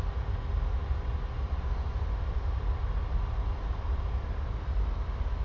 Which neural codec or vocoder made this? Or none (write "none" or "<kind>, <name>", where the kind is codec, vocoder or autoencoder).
none